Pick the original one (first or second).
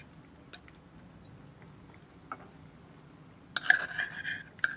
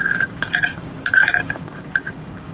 first